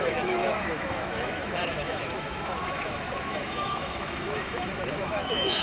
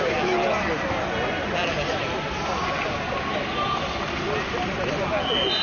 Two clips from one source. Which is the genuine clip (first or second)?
second